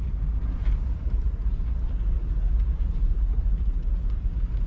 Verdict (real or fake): fake